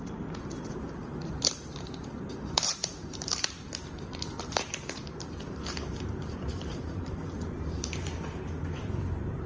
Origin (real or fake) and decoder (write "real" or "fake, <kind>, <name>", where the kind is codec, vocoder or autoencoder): fake, vocoder, BigVGAN v2